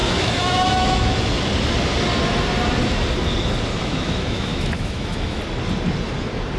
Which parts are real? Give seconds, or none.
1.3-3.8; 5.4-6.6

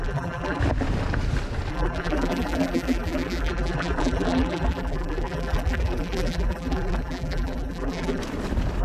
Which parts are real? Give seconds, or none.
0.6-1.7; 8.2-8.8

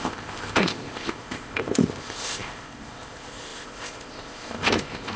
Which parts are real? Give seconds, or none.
none

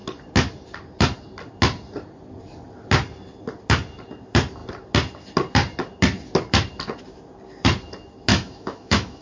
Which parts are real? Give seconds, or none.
0.0-8.3

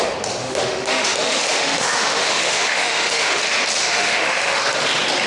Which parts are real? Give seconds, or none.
0.0-0.4; 3.4-3.8; 4.6-5.3